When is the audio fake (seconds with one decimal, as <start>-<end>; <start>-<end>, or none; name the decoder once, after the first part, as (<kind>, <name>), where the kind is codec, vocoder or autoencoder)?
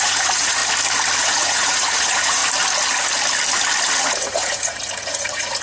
0.0-0.6 (vocoder, Vocos); 1.2-2.4; 4.0-5.6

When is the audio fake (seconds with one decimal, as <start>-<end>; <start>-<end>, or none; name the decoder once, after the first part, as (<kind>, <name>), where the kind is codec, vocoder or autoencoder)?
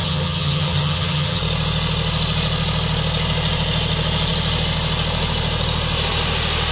0.0-1.4 (vocoder, HiFi-GAN)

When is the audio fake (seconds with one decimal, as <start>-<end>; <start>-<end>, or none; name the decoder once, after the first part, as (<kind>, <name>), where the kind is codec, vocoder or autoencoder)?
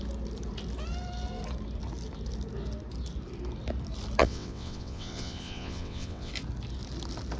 4.2-6.3 (vocoder, WaveNeXt)